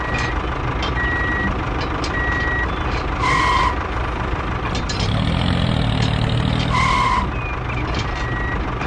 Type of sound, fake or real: real